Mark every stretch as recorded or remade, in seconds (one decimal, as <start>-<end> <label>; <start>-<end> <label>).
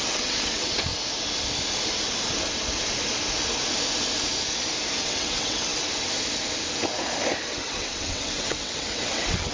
0.0-0.9 remade; 0.9-5.0 recorded; 5.0-5.8 remade; 5.8-7.5 recorded; 7.5-9.5 remade